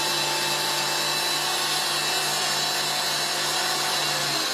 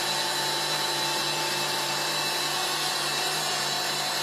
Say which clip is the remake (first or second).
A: second